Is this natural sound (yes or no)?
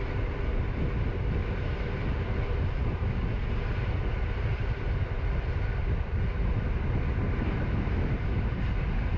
yes